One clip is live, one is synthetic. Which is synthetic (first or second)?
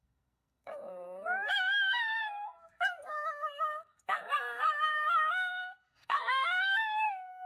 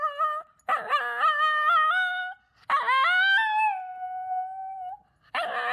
first